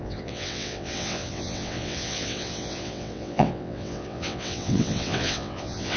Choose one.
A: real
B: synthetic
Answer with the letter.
B